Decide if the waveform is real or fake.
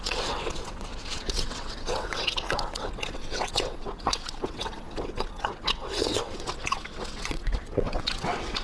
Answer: fake